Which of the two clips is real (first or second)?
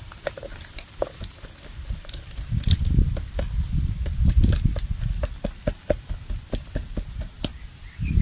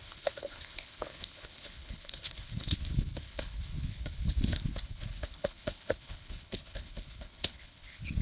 first